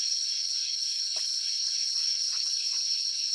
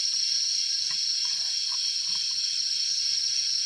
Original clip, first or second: second